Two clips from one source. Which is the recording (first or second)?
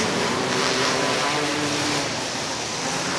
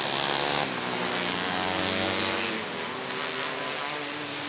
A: second